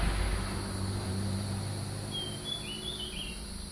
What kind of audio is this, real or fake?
real